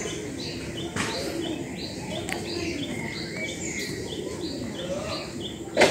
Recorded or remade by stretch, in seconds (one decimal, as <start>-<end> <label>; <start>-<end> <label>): 0.0-2.9 recorded; 2.9-5.1 remade; 5.1-5.9 recorded